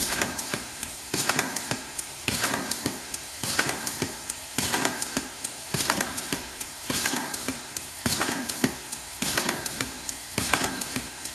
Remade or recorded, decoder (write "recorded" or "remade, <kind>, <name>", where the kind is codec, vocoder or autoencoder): remade, codec, SNAC